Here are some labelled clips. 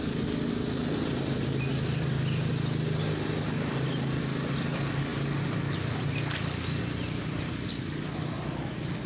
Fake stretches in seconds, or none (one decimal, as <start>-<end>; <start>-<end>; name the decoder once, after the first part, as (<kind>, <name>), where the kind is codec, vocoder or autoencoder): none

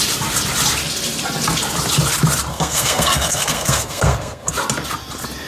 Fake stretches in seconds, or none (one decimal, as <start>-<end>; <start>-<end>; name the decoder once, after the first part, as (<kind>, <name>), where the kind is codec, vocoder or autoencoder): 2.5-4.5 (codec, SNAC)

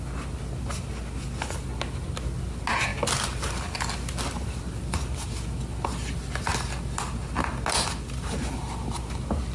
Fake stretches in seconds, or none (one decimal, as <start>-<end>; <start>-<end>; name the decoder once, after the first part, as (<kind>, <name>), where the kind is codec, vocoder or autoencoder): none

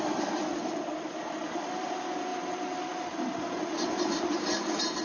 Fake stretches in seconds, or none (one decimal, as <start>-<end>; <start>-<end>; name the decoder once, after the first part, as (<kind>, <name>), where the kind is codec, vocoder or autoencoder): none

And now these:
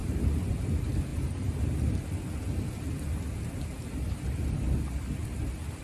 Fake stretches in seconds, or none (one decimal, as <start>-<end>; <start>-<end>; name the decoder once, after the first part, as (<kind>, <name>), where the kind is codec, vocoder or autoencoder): none

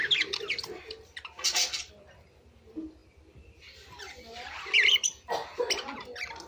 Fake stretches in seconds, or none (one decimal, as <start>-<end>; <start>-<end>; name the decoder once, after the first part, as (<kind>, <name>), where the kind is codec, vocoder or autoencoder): none

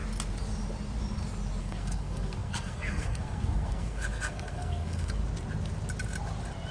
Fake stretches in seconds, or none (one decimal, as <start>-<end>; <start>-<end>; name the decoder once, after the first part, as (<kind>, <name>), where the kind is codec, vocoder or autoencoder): 1.6-5.2 (codec, SNAC)

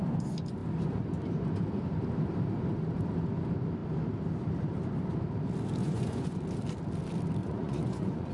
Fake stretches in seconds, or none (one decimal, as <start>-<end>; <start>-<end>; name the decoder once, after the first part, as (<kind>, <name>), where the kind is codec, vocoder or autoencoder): 5.8-6.4 (vocoder, Vocos); 7.4-8.3